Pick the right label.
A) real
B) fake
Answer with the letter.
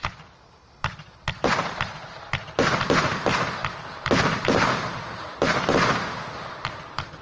A